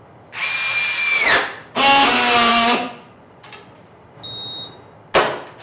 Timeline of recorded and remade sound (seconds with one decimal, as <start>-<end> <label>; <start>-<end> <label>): 0.0-2.5 recorded; 2.5-3.7 remade; 3.7-5.6 recorded